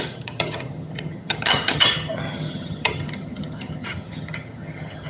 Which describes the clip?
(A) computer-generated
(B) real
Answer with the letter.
A